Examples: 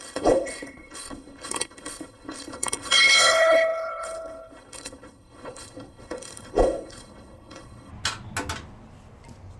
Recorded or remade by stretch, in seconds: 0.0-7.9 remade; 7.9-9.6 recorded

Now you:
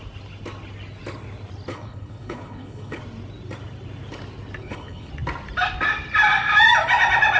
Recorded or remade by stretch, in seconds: 0.0-1.7 recorded; 1.7-3.0 remade; 3.0-4.6 recorded; 4.6-5.1 remade; 5.1-7.4 recorded

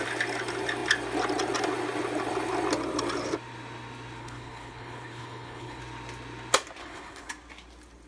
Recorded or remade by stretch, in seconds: 0.0-4.2 recorded; 4.2-5.8 remade; 5.8-6.8 recorded; 6.8-7.3 remade; 7.3-8.1 recorded

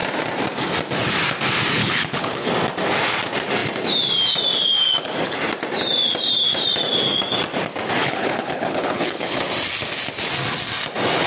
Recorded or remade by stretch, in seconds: 0.0-1.8 recorded; 1.8-2.5 remade; 2.5-8.0 recorded; 8.0-9.4 remade; 9.4-11.3 recorded

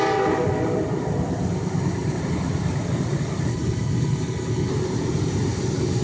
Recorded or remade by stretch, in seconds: 0.0-3.5 recorded; 3.5-4.7 remade; 4.7-6.0 recorded